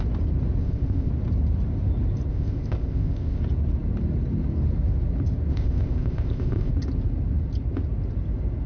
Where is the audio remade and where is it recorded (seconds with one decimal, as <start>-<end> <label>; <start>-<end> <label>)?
0.0-0.6 recorded; 0.6-1.1 remade; 1.1-2.3 recorded; 2.3-3.4 remade; 3.4-5.5 recorded; 5.5-6.7 remade; 6.7-8.7 recorded